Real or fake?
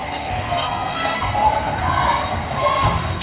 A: fake